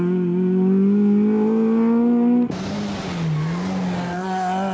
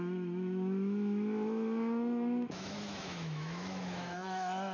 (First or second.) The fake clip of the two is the second